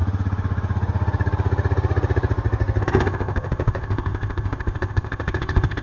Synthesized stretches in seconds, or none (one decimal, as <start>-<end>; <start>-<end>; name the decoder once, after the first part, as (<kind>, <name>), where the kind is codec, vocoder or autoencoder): 2.8-5.8 (codec, ZipCodec)